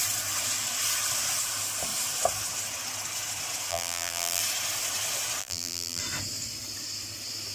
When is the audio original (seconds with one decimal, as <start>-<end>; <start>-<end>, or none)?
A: 0.0-3.7; 4.4-5.4; 6.0-7.5